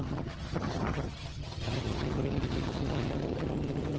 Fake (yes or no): yes